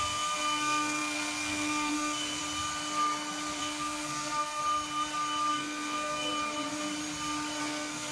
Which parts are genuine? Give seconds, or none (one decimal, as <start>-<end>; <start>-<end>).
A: 2.4-3.6; 4.6-5.5; 6.3-7.6